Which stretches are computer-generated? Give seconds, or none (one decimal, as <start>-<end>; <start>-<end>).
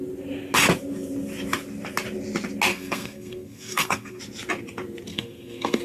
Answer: 2.7-4.2; 5.1-5.8